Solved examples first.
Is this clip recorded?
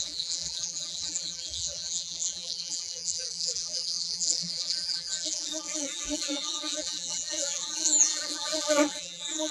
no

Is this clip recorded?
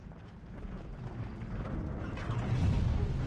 yes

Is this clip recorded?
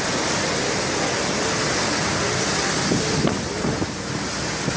yes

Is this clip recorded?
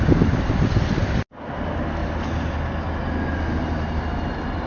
yes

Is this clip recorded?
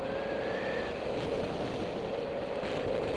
yes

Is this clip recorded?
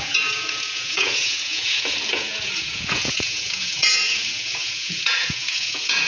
no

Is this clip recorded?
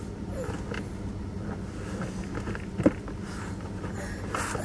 yes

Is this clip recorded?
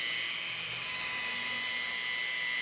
yes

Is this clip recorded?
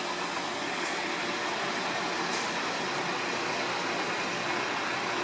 yes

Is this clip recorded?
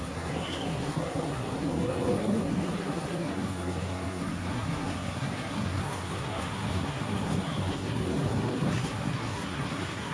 no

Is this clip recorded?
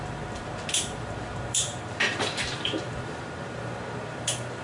no